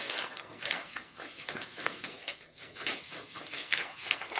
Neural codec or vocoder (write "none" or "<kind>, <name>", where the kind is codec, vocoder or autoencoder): codec, SNAC